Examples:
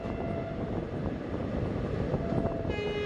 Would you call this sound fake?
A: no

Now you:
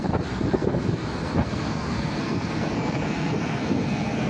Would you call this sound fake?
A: yes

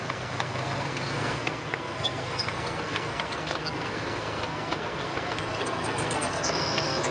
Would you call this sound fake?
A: yes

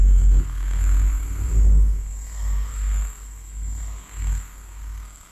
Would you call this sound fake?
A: yes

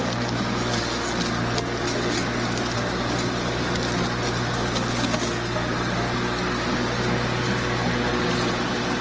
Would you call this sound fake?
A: no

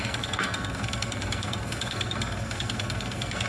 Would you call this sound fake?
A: yes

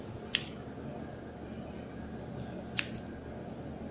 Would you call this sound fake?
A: no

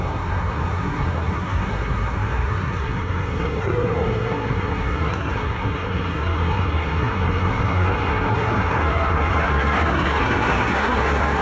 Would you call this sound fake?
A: yes